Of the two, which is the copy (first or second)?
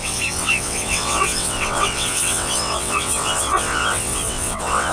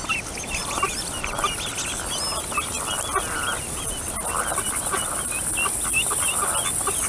first